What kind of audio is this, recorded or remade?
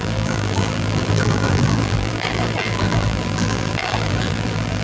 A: remade